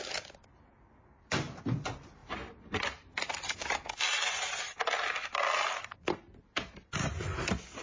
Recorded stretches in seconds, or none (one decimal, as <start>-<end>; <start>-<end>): 0.0-7.8